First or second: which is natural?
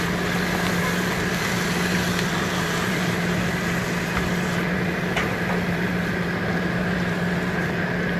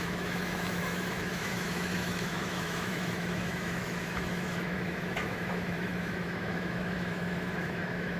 first